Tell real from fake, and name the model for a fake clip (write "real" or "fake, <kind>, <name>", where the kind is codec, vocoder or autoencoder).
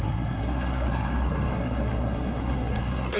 fake, codec, SNAC